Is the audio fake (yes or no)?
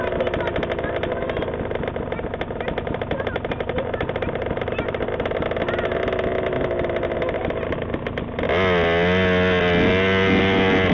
no